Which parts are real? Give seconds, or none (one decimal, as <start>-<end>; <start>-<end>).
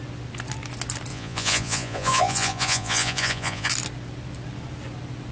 0.0-1.1; 3.7-5.3